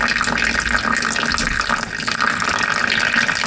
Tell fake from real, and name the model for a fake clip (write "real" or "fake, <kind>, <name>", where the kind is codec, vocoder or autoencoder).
real